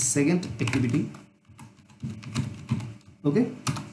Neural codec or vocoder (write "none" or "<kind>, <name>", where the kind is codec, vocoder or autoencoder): none